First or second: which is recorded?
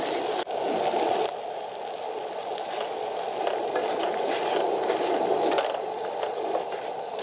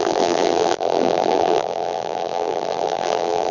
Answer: first